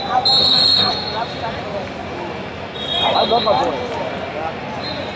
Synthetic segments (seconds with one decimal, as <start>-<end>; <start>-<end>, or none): 0.4-0.9